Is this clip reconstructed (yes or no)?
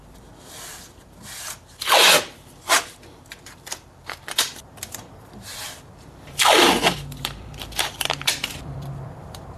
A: yes